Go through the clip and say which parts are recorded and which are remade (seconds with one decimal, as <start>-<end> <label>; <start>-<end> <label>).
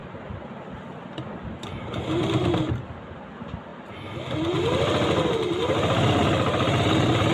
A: 0.0-7.3 recorded